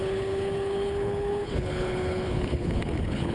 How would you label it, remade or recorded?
remade